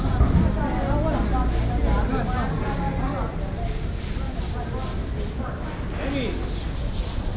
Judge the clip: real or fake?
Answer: real